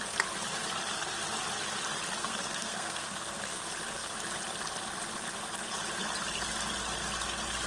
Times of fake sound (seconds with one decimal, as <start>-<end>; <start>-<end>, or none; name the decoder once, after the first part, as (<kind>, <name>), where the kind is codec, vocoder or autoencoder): 2.2-3.6 (codec, SNAC)